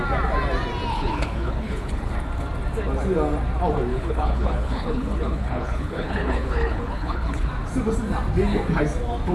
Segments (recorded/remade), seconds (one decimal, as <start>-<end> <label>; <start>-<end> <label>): 0.0-0.9 recorded; 0.9-2.1 remade; 2.1-3.9 recorded; 3.9-7.5 remade; 7.5-9.3 recorded